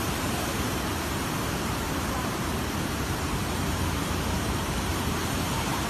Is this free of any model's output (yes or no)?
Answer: no